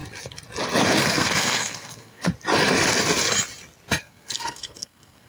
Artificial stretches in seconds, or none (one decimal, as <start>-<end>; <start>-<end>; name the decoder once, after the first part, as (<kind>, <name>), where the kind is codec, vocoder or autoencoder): 1.0-2.3 (codec, SNAC); 4.0-5.3

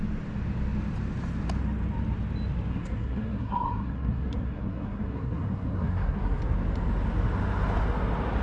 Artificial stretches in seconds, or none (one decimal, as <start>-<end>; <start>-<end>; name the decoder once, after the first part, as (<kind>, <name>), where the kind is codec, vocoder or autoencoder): 2.7-6.4 (codec, SNAC)

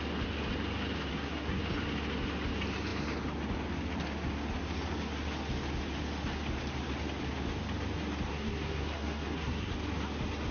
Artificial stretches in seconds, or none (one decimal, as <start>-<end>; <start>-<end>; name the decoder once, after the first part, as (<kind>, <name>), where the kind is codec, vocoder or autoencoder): 1.1-1.6 (codec, SNAC); 8.3-9.7

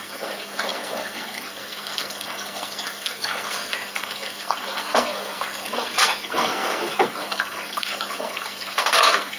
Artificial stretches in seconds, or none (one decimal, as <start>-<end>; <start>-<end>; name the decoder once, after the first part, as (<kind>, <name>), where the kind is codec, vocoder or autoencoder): 0.0-9.4 (codec, SNAC)

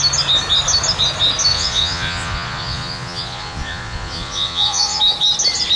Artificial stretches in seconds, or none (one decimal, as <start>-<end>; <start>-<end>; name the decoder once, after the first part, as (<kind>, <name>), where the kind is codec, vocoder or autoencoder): 1.5-5.0 (vocoder, Vocos)

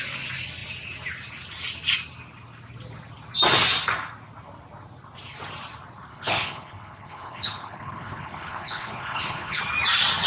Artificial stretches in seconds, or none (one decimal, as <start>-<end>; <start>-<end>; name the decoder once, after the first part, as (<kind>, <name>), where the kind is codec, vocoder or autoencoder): 6.1-9.6 (codec, HILCodec)